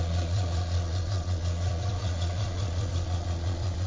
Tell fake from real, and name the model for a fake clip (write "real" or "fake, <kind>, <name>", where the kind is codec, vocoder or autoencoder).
fake, vocoder, Vocos